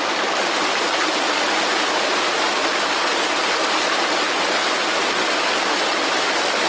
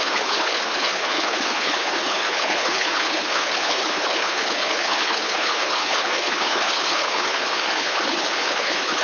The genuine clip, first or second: first